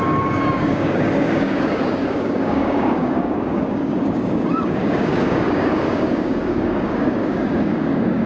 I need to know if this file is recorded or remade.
remade